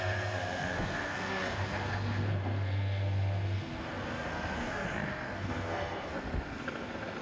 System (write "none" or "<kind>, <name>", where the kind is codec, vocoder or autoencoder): codec, SNAC